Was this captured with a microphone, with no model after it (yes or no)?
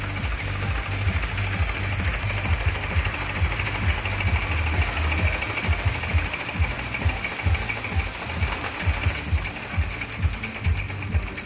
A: yes